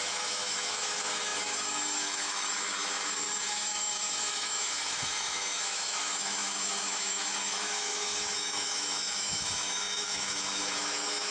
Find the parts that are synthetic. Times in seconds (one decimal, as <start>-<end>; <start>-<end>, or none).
0.0-11.3